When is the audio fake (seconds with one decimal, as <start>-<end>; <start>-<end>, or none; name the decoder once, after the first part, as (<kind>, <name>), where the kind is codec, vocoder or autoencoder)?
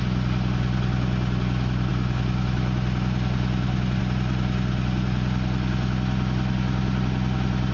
none